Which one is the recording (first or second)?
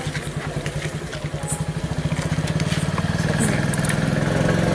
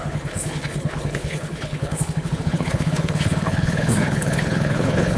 first